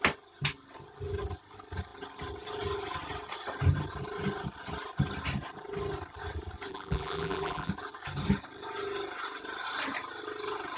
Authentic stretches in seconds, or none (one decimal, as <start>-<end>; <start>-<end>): 0.0-6.7; 7.7-10.8